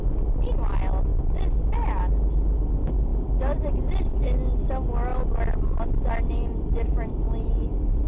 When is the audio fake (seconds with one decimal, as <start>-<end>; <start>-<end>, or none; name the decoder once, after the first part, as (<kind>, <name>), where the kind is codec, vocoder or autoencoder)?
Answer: none